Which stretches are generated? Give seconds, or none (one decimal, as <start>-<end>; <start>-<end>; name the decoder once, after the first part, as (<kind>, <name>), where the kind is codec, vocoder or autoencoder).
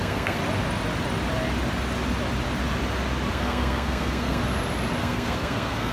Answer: 0.0-0.4 (codec, SNAC); 3.3-4.4; 5.0-5.9